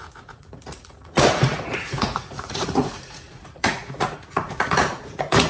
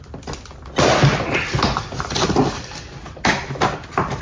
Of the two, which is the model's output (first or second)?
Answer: first